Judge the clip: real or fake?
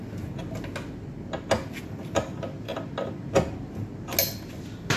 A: real